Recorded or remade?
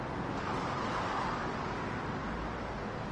recorded